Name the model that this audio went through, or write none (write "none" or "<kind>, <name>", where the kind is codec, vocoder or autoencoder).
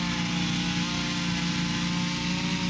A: none